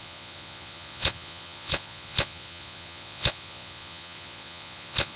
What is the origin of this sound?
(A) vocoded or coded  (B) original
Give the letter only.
A